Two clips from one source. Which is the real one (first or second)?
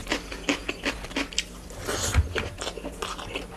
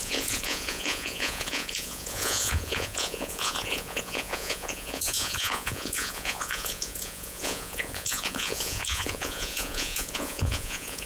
first